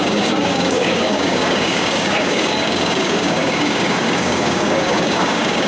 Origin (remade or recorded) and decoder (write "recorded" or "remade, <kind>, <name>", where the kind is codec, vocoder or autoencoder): remade, codec, DAC